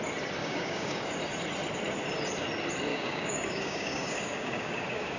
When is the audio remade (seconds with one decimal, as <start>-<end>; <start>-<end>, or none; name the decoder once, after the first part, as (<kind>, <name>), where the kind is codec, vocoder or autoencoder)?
0.4-1.1 (codec, DAC); 2.9-5.2